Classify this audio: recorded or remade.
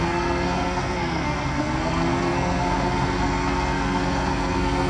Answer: remade